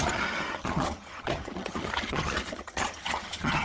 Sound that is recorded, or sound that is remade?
remade